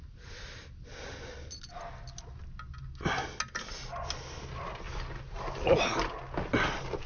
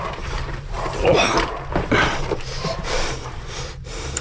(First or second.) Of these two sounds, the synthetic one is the second